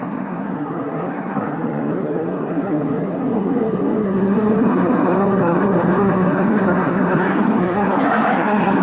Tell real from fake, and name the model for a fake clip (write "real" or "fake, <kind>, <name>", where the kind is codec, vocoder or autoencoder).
fake, codec, SNAC